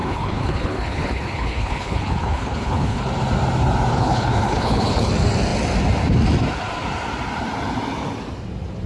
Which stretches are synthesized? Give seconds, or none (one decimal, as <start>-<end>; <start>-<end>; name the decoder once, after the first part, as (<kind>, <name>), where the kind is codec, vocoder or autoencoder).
0.0-3.1 (codec, HILCodec); 3.9-5.1